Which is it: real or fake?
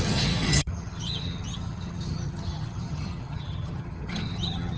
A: fake